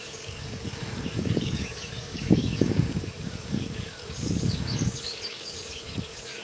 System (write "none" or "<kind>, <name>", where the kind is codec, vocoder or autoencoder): codec, DAC